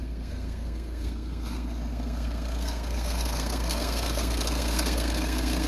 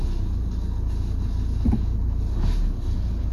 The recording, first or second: second